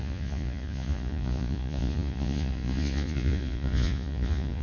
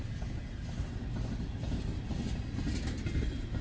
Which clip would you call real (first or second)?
second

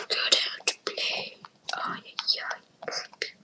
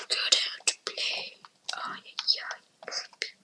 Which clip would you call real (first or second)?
second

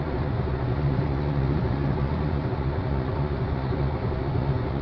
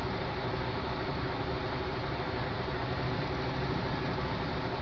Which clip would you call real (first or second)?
second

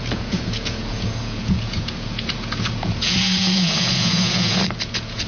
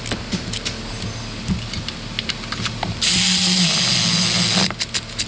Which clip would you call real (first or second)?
second